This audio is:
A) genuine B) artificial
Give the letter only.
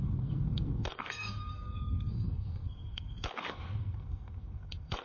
B